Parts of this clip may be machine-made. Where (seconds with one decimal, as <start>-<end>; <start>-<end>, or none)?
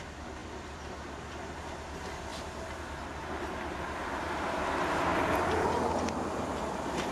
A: none